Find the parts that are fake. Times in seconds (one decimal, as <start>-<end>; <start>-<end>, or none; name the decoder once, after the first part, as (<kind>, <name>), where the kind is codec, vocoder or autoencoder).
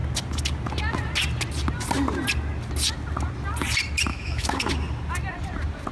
4.1-4.7 (autoencoder, DAC-VAE)